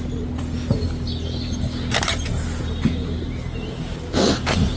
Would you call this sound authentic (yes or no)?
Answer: yes